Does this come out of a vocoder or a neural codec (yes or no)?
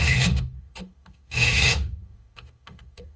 yes